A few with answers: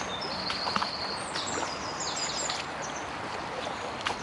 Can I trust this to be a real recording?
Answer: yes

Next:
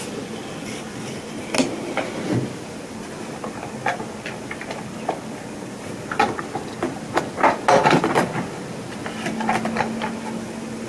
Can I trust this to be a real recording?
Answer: yes